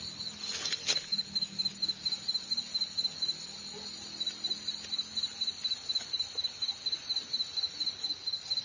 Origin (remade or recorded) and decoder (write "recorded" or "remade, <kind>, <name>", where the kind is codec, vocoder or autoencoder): recorded